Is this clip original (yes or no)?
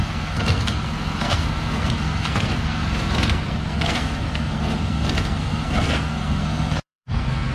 no